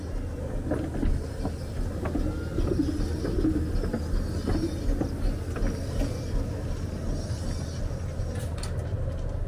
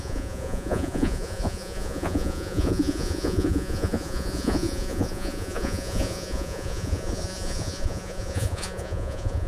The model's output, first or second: second